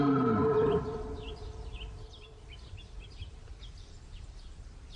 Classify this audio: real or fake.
fake